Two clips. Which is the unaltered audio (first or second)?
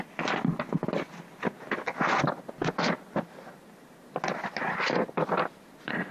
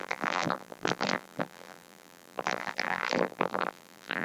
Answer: first